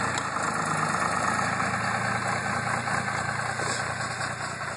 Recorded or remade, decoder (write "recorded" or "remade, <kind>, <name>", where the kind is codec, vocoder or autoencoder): recorded